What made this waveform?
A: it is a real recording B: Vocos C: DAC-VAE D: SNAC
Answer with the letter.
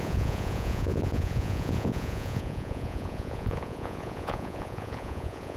B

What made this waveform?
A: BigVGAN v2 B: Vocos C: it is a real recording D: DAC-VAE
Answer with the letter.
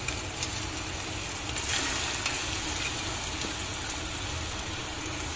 C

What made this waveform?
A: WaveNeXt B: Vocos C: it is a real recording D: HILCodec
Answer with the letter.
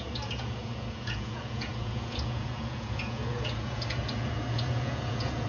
B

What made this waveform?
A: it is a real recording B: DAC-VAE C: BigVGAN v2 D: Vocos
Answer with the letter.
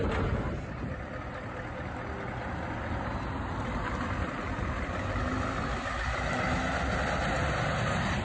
A